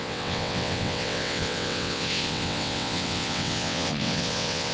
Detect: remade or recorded remade